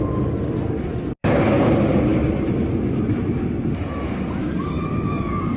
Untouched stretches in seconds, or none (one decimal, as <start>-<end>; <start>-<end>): 0.0-1.2; 1.7-4.4